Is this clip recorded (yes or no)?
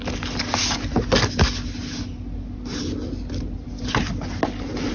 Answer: yes